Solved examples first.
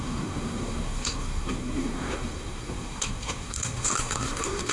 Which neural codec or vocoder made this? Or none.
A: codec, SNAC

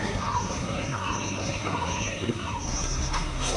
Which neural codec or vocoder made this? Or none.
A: codec, SNAC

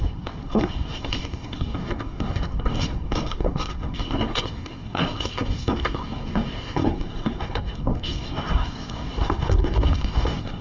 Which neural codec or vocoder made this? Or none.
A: codec, SNAC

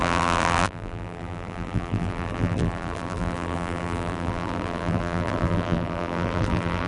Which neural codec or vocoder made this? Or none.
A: vocoder, BigVGAN v2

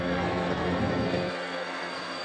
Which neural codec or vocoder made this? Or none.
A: codec, SNAC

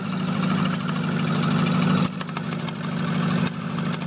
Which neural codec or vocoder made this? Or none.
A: none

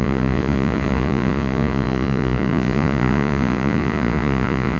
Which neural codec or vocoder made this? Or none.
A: vocoder, Vocos